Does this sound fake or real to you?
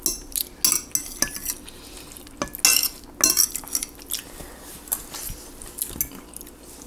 real